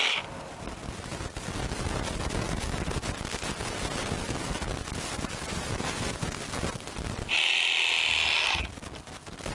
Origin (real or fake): real